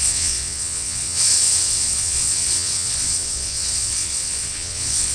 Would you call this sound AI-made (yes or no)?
yes